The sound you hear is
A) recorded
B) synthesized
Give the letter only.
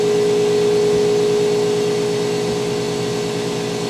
A